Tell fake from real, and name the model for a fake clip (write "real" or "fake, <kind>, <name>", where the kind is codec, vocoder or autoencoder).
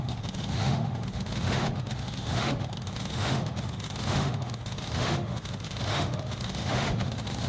fake, autoencoder, DAC-VAE